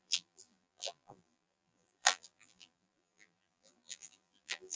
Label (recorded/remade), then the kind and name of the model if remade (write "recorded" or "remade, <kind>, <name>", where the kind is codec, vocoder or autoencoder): remade, vocoder, BigVGAN v2